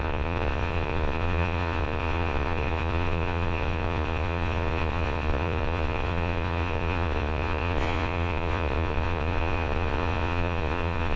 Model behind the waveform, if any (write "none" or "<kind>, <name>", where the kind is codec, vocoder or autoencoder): vocoder, Vocos